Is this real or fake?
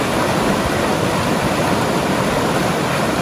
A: real